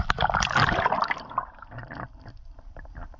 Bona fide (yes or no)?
no